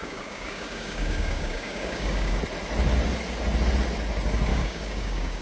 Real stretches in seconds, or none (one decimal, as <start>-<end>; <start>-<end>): 2.4-4.5